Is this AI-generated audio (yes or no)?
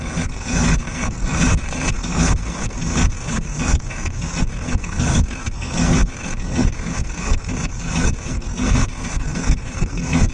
yes